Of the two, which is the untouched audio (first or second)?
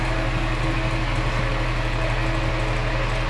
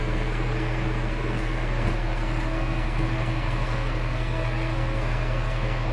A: first